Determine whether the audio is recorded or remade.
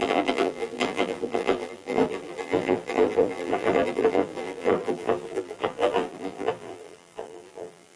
remade